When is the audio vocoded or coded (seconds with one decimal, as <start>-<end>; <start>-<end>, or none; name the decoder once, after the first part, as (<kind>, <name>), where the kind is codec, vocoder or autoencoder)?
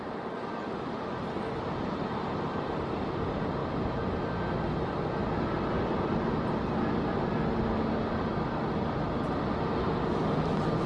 none